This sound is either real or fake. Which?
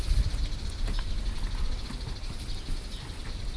real